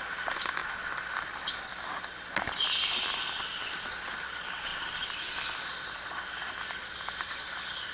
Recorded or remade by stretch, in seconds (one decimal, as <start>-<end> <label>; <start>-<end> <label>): 0.0-7.9 recorded